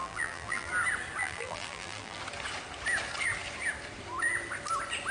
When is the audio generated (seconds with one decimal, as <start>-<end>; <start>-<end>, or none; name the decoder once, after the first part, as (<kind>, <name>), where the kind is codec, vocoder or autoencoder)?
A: 0.0-0.7 (vocoder, BigVGAN v2); 1.2-2.2